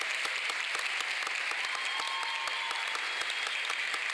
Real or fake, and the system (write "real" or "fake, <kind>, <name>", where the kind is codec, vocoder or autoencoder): real